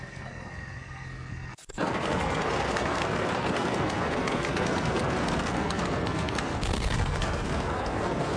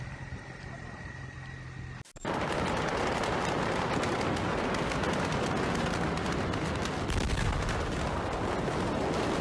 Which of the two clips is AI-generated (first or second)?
first